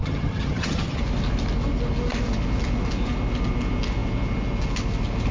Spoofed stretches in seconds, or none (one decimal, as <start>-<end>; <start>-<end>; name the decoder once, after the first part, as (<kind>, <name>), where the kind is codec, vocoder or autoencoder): 0.0-1.0 (vocoder, HiFi-GAN)